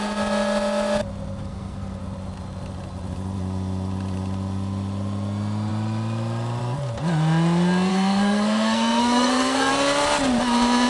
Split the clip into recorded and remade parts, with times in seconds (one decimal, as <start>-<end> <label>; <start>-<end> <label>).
0.0-1.4 recorded; 1.4-2.0 remade; 2.0-7.9 recorded; 7.9-9.7 remade; 9.7-10.9 recorded